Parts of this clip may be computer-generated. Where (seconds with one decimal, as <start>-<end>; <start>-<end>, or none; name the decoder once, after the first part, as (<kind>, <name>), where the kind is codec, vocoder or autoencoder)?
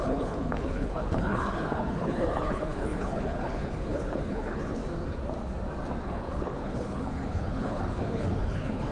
0.0-4.8 (codec, HILCodec); 6.0-8.9